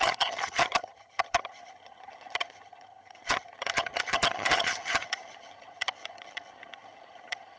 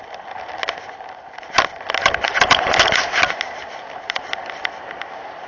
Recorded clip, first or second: second